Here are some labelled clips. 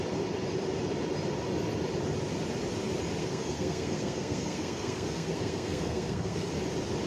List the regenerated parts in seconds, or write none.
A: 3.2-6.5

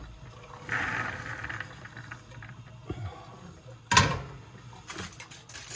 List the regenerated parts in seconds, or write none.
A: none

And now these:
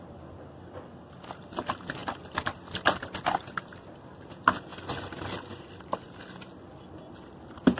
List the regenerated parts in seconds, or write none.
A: none

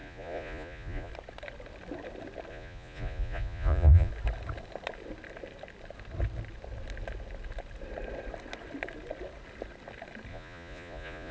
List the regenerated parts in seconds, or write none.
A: 0.0-1.1; 2.5-4.1; 10.3-11.3